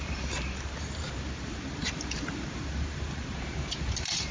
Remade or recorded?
remade